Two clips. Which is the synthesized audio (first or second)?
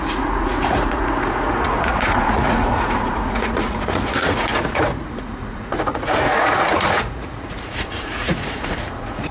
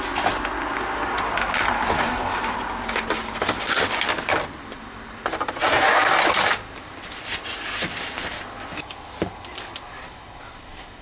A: first